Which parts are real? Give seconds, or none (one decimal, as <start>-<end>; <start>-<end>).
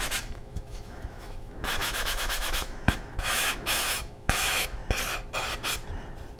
4.8-6.4